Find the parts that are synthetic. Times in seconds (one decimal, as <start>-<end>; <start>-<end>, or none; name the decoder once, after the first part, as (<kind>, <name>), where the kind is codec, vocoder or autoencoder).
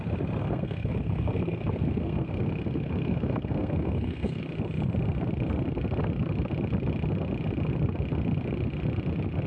0.4-4.4 (codec, SNAC)